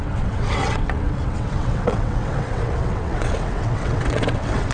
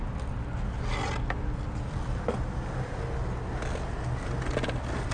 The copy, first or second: first